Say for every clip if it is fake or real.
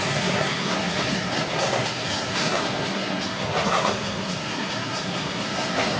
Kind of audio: fake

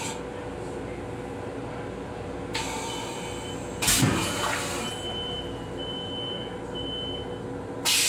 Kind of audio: real